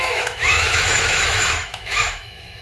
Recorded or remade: remade